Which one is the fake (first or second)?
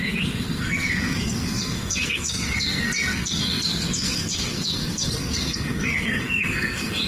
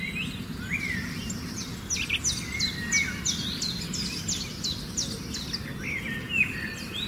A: first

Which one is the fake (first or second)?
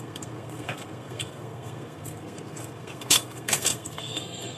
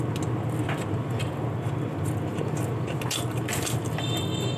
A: first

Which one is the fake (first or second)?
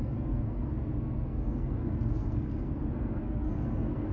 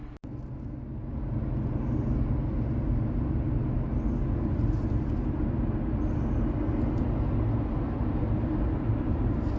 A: first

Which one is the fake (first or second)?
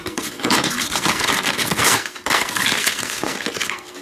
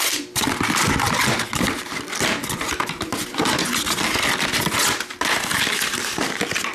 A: first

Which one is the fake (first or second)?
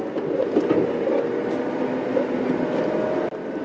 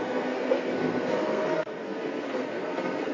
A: second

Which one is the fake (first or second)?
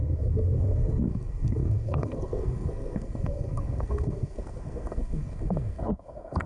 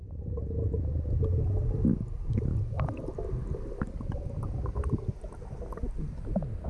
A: first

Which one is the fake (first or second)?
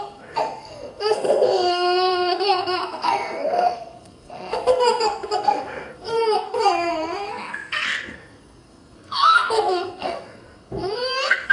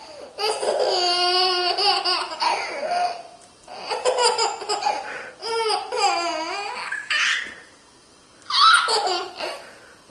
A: first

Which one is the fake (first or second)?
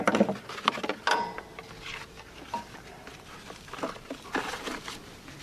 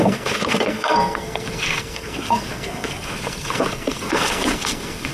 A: second